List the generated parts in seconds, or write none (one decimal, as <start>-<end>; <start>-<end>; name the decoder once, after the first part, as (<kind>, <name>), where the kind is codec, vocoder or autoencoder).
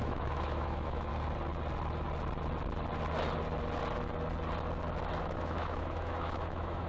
0.0-1.1 (autoencoder, DAC-VAE); 5.2-6.9